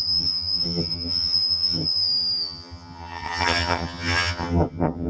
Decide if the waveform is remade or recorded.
remade